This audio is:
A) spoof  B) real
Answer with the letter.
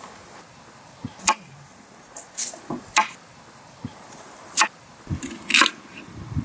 B